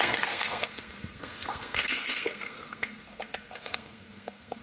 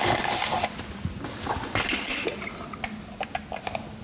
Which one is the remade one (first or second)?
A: first